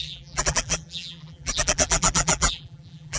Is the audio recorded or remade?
remade